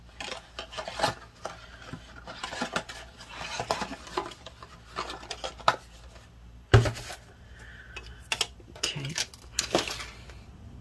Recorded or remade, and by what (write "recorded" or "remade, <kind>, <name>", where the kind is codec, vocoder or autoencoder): recorded